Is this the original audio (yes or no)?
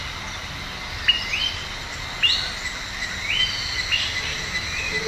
yes